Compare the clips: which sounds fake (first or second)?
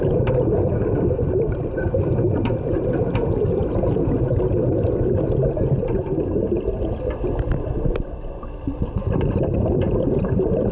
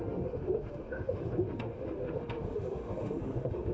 second